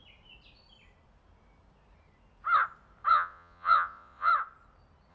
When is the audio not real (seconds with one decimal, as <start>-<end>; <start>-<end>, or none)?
3.1-4.3